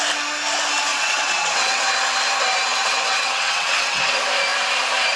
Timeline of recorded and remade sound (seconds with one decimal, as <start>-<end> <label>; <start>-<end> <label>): 0.0-0.9 recorded; 0.9-1.9 remade; 1.9-2.7 recorded; 2.7-4.1 remade; 4.1-5.2 recorded